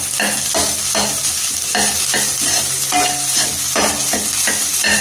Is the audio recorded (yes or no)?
yes